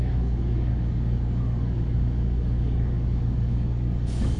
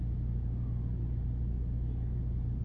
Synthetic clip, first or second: first